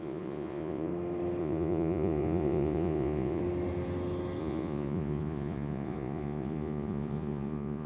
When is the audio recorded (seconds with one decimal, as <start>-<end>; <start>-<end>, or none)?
0.9-1.4; 3.4-4.4